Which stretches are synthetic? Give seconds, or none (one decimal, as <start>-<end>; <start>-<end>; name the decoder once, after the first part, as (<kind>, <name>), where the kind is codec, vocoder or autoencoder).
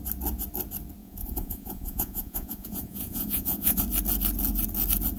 1.0-3.8 (vocoder, Vocos)